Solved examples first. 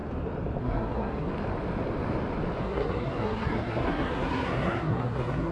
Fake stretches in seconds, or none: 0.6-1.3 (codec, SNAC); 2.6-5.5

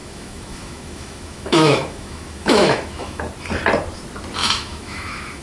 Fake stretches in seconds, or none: 0.0-3.2 (autoencoder, DAC-VAE); 4.4-5.4

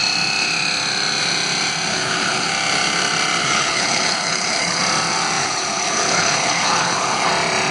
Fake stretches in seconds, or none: 1.9-2.5 (codec, HILCodec); 3.4-4.8; 5.4-7.3

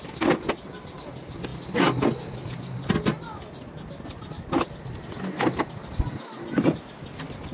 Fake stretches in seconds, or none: none

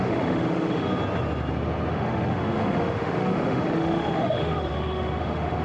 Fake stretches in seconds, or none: 0.0-0.9 (autoencoder, DAC-VAE); 1.9-5.6

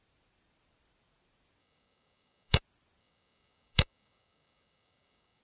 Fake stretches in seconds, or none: 1.6-2.6 (codec, DAC); 3.0-5.4